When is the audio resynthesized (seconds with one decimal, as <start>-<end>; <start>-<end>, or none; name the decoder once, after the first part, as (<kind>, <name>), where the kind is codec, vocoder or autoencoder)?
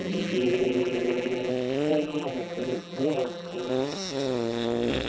0.0-1.5 (vocoder, BigVGAN v2); 1.9-3.7